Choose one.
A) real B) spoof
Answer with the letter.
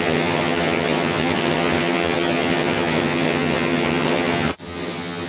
B